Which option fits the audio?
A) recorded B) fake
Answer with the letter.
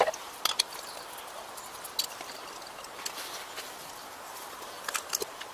A